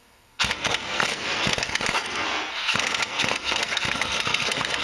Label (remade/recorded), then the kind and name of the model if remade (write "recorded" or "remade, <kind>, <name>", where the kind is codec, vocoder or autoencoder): remade, codec, SNAC